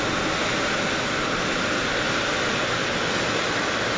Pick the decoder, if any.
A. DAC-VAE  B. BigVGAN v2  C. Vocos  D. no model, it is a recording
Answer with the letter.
D